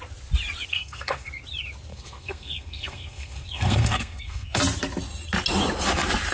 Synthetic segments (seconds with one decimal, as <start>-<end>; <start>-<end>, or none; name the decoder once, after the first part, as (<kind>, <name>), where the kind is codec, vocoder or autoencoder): 0.7-1.3 (codec, SNAC); 1.9-4.6